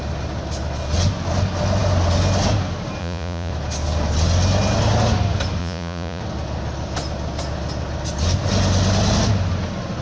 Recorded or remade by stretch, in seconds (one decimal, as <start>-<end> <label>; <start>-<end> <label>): 0.0-3.0 recorded; 3.0-3.5 remade; 3.5-5.6 recorded; 5.6-6.2 remade; 6.2-10.0 recorded